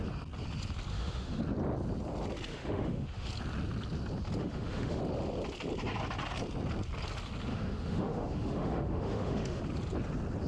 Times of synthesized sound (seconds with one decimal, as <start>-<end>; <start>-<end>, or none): 0.9-1.4; 2.5-3.3; 4.4-5.0; 7.5-9.6